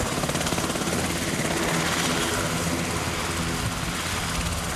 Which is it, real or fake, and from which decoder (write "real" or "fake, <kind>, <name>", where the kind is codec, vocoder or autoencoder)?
real